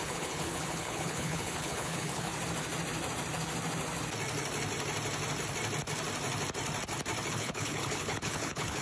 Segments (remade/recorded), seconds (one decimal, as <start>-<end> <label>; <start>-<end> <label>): 0.0-2.3 remade; 2.3-7.3 recorded; 7.3-8.8 remade